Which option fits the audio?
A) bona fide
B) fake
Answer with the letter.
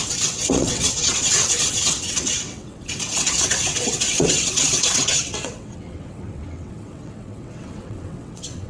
B